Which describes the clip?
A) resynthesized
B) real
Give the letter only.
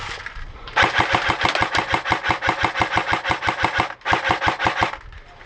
B